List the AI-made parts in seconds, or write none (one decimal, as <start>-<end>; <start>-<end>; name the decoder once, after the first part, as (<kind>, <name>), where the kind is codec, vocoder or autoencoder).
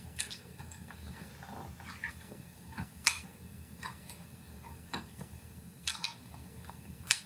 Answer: 0.0-1.3 (codec, SNAC); 2.1-7.3